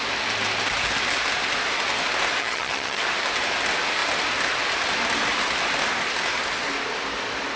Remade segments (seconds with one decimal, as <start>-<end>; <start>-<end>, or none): 2.4-3.0